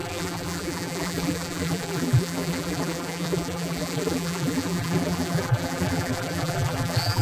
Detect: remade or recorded remade